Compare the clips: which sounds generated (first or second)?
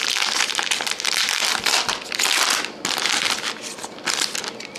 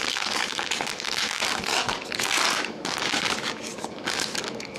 second